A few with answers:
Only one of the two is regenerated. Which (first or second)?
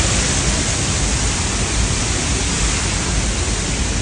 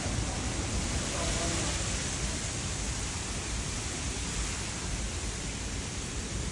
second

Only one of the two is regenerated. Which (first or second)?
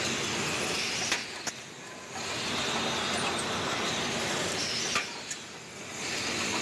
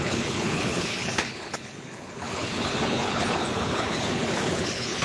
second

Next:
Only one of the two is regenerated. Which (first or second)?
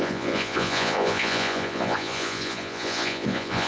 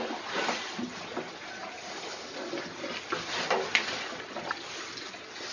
first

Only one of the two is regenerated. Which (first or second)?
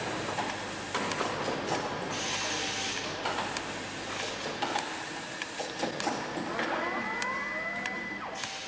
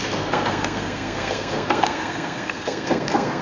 second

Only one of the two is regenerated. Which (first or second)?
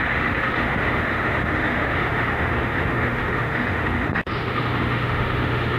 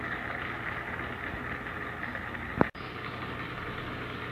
first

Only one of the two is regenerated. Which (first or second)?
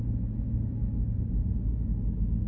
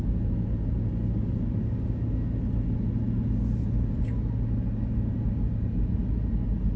first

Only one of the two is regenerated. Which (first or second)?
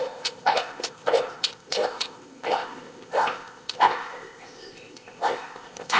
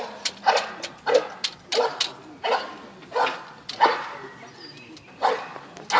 first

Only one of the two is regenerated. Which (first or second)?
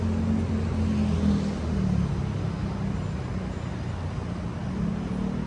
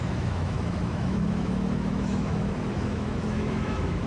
second